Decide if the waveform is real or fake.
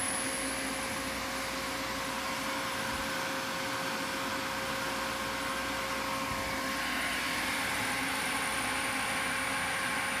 real